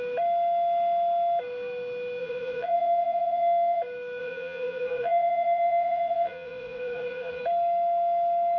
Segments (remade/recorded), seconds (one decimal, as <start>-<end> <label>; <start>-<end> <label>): 0.0-2.2 recorded; 2.2-3.8 remade; 3.8-4.2 recorded; 4.2-7.4 remade; 7.4-8.6 recorded